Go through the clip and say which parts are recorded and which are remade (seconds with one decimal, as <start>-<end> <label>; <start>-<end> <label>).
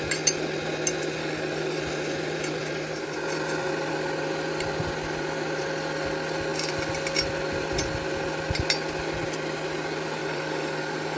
0.0-1.2 recorded; 1.2-1.8 remade; 1.8-10.2 recorded; 10.2-11.2 remade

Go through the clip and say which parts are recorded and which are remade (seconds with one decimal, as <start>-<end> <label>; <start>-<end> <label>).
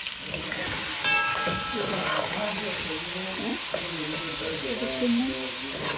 0.0-1.3 recorded; 1.3-2.5 remade; 2.5-6.0 recorded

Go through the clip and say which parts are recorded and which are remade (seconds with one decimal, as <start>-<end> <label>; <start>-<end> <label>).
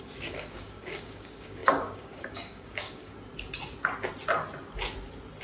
0.0-3.1 remade; 3.1-5.4 recorded